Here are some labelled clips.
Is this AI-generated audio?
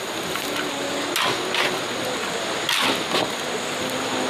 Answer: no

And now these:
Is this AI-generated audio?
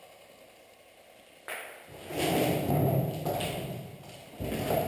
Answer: no